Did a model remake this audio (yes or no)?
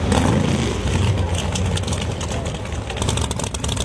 no